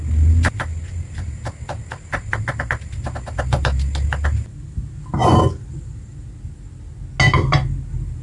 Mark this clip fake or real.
real